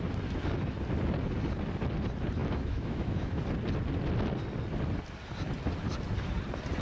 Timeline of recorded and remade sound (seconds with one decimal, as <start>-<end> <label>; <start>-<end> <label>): 0.0-2.4 recorded; 2.4-3.4 remade; 3.4-6.8 recorded